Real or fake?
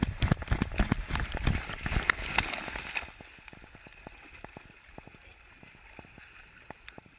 real